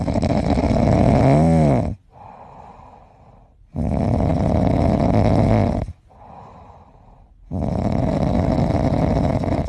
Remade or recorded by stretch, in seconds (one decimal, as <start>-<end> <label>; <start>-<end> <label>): 0.0-9.7 recorded